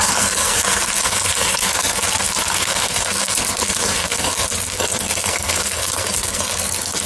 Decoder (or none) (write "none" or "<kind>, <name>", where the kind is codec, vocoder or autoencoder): codec, SNAC